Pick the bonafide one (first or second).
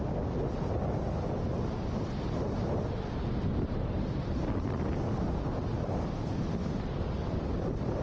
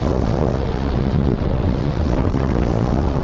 first